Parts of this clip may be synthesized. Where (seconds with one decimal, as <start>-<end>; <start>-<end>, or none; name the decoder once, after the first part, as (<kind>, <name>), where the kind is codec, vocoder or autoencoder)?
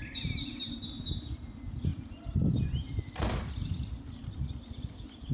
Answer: none